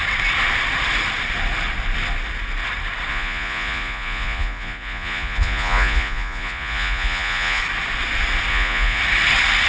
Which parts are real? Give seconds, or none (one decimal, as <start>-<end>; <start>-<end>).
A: 0.0-3.1; 7.6-8.5; 9.0-9.7